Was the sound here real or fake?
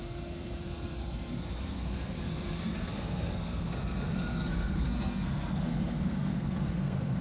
fake